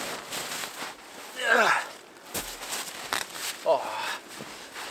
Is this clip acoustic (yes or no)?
yes